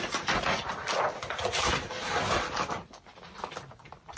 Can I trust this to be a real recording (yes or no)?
yes